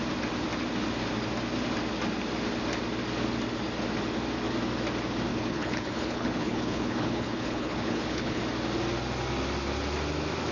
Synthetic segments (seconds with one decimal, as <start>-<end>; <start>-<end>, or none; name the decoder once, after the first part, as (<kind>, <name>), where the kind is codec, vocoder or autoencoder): 5.3-8.4 (codec, HILCodec)